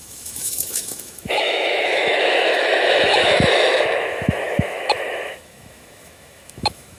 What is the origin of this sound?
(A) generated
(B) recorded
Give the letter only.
A